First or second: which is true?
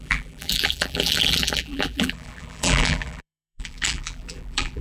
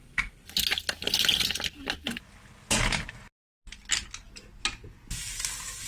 second